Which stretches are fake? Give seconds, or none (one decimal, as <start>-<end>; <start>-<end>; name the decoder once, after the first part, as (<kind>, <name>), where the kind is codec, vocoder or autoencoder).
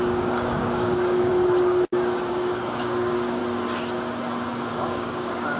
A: 0.0-1.3 (codec, DAC); 2.3-3.4; 4.7-5.6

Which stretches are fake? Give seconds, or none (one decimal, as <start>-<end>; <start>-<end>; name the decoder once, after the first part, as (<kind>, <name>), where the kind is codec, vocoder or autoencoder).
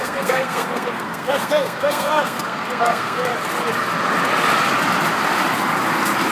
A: 0.0-3.3 (codec, SNAC)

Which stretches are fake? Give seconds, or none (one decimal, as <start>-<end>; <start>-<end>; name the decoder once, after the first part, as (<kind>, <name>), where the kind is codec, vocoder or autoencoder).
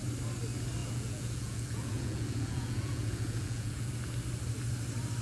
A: 0.8-3.9 (vocoder, Vocos)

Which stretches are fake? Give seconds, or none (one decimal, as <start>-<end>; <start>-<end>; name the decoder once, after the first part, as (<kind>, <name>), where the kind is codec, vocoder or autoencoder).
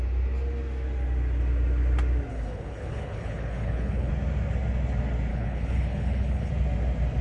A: 2.3-4.1 (codec, HILCodec); 5.3-6.5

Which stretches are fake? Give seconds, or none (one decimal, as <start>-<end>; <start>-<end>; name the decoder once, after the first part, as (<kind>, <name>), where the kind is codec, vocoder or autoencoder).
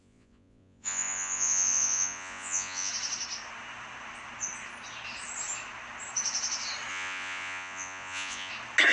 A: 0.0-2.9 (vocoder, Vocos); 6.9-8.5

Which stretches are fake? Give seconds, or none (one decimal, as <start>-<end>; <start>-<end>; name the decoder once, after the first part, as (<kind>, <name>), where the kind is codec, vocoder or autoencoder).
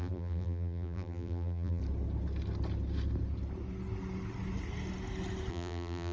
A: 0.0-1.8 (vocoder, BigVGAN v2); 5.5-6.1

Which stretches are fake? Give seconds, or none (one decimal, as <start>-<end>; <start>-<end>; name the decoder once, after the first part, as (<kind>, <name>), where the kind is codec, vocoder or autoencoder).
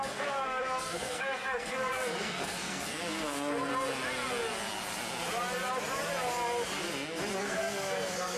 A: 0.0-3.7 (codec, SNAC); 7.4-8.4